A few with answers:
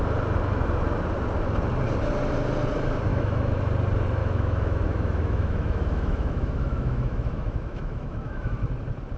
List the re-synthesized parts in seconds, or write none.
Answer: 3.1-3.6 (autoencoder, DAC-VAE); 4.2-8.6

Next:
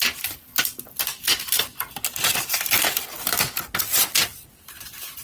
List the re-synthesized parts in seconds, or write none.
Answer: none

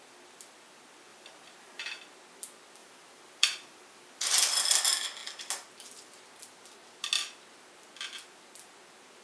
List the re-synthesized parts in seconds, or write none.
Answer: 1.1-2.0 (vocoder, BigVGAN v2); 2.8-4.5